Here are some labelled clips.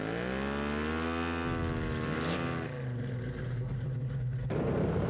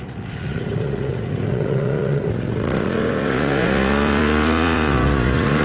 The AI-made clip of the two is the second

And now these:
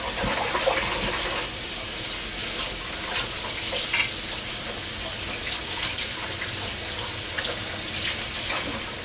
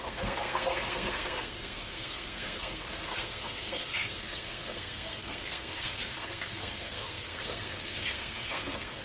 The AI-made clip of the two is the second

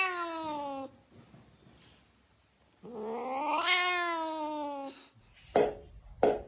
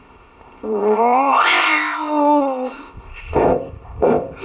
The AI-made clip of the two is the second